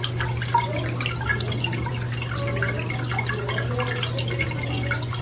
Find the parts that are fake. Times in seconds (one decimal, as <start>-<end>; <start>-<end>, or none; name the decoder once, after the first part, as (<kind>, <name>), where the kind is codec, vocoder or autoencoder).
none